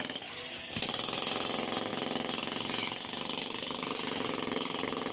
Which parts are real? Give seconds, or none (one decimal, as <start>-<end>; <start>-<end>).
1.9-5.1